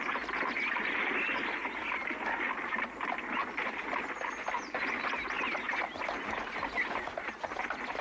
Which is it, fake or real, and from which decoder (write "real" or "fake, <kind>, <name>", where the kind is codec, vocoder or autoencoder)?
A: real